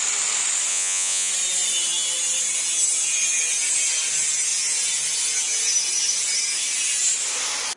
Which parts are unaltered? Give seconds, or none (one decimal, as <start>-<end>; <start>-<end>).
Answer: 0.0-0.7; 1.3-7.8